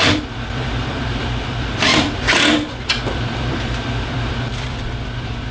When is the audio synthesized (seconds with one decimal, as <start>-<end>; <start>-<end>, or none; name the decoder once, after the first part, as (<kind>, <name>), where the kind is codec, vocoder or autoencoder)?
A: 0.0-5.5 (vocoder, BigVGAN v2)